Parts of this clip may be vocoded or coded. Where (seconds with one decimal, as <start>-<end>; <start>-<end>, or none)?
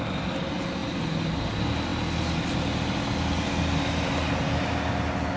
none